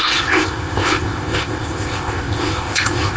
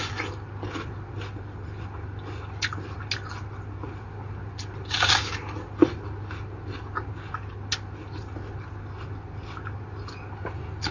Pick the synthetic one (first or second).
first